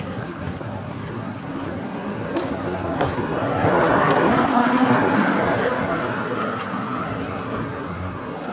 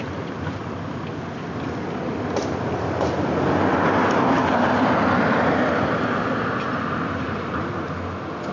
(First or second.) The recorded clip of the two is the second